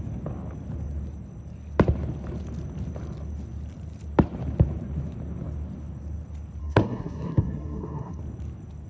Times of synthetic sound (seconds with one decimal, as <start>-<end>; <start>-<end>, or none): 6.6-8.2